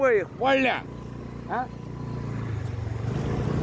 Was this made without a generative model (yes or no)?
yes